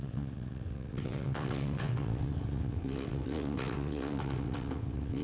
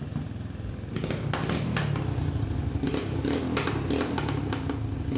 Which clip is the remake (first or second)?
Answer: first